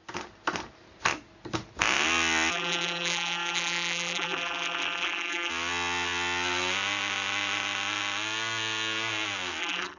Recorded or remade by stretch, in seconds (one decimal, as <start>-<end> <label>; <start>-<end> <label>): 0.0-2.5 recorded; 2.5-5.5 remade; 5.5-9.6 recorded; 9.6-10.0 remade